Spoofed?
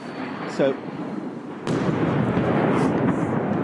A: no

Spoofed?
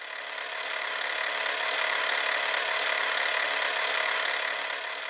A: no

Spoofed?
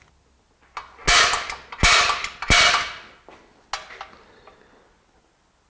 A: no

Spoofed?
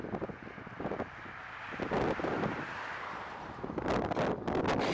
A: no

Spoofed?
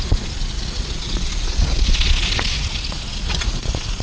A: yes